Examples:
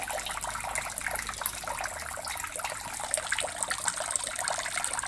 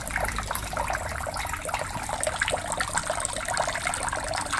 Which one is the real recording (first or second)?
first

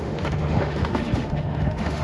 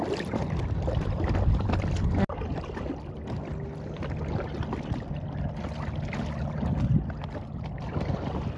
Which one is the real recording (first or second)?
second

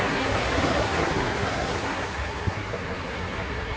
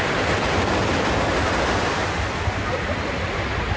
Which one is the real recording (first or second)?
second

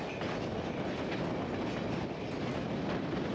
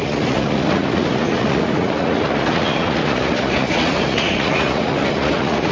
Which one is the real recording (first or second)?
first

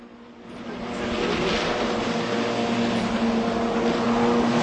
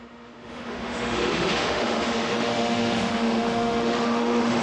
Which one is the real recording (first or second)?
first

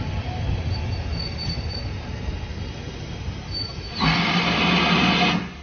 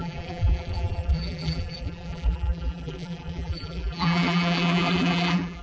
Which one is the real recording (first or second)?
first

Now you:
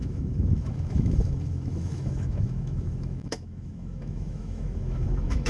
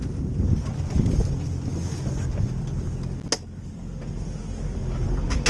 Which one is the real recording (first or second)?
second